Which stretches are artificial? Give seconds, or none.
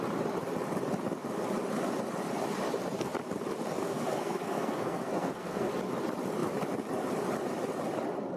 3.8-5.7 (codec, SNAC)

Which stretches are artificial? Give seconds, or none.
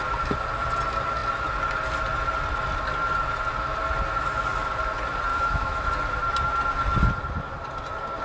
5.3-5.9 (autoencoder, DAC-VAE)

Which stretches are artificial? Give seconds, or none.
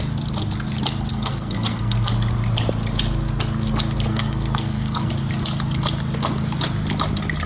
1.1-2.1 (codec, SNAC); 4.1-5.1